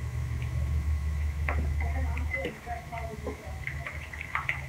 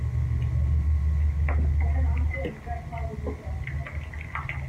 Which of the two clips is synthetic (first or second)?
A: first